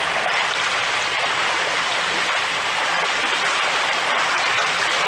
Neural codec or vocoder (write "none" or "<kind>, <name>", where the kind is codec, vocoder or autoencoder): none